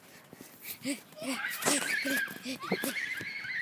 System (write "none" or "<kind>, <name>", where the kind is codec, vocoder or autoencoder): none